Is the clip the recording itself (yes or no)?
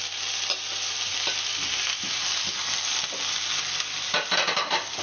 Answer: no